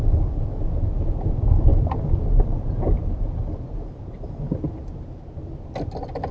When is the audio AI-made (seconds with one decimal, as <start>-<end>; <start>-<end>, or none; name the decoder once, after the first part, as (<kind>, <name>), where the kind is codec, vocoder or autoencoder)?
none